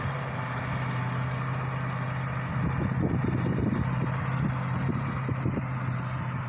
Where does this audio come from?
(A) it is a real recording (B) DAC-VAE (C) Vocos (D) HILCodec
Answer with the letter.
A